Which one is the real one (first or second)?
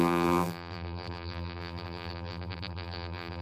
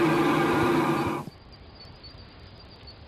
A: second